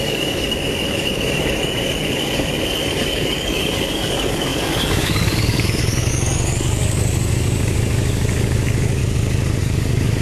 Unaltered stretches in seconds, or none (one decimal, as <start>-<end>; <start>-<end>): 9.0-9.6